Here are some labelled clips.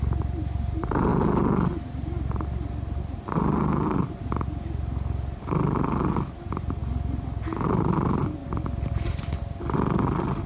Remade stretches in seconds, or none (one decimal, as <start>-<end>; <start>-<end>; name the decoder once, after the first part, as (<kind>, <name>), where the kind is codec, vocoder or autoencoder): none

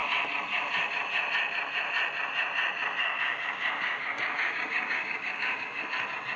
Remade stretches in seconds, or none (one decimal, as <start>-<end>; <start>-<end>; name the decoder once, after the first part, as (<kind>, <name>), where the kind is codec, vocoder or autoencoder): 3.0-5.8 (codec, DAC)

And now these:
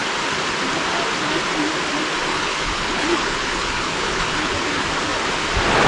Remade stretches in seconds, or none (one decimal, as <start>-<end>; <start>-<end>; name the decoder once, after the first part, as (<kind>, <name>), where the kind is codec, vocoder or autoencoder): 2.3-4.5 (codec, HILCodec)

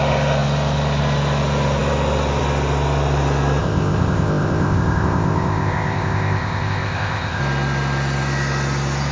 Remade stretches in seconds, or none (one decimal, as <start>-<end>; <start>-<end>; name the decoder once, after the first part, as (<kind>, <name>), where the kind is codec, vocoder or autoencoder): 3.6-7.4 (codec, ZipCodec)

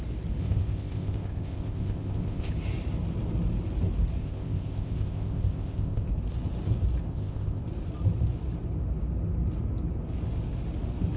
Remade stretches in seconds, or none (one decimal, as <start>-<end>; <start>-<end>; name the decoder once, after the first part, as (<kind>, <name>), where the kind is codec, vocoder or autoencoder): 0.4-2.5 (codec, ZipCodec); 4.2-6.1; 7.1-7.6

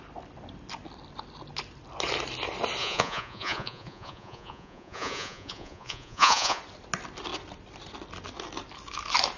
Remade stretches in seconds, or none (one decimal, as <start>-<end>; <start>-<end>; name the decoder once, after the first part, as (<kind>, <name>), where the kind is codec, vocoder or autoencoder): 2.8-6.6 (vocoder, Vocos)